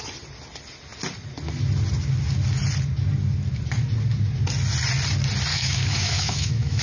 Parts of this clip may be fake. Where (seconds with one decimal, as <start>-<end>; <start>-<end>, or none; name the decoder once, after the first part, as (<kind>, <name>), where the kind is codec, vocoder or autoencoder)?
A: 5.5-6.8 (autoencoder, DAC-VAE)